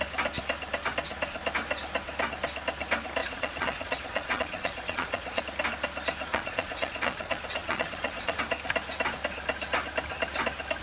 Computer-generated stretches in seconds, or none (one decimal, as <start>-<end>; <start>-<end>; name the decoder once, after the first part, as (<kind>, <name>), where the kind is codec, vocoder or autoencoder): 3.2-5.4 (vocoder, Vocos); 6.3-8.4